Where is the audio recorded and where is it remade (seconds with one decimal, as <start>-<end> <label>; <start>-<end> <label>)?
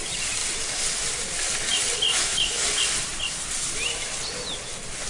0.0-2.1 recorded; 2.1-2.7 remade; 2.7-5.1 recorded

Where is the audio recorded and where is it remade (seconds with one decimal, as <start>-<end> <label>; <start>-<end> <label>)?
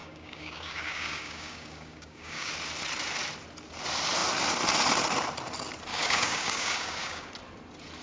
0.0-2.5 remade; 2.5-5.9 recorded; 5.9-7.3 remade; 7.3-8.0 recorded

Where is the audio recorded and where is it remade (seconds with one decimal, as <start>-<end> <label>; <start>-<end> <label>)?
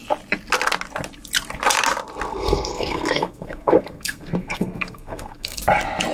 0.0-2.3 recorded; 2.3-5.6 remade; 5.6-6.1 recorded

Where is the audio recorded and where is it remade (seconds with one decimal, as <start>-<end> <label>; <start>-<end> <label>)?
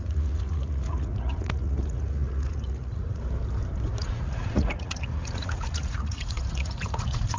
0.0-3.2 remade; 3.2-4.0 recorded; 4.0-7.4 remade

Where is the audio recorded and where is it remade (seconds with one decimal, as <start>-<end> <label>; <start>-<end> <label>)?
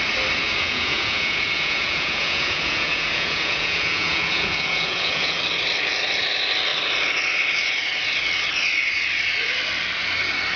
0.0-0.4 recorded; 0.4-5.4 remade; 5.4-10.6 recorded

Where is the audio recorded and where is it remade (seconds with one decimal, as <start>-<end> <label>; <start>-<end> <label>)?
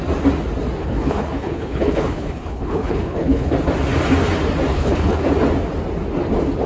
0.0-0.8 recorded; 0.8-3.5 remade; 3.5-4.7 recorded; 4.7-5.2 remade; 5.2-6.7 recorded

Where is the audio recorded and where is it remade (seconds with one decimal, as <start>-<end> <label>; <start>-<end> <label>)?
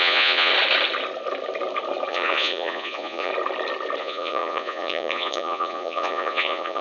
0.0-0.5 remade; 0.5-2.1 recorded; 2.1-3.3 remade; 3.3-4.0 recorded; 4.0-6.8 remade